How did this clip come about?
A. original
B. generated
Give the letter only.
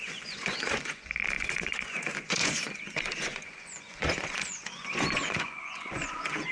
B